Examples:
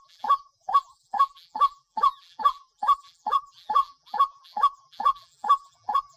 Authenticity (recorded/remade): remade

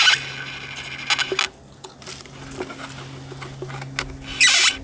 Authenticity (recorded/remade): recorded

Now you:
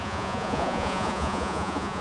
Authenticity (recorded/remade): remade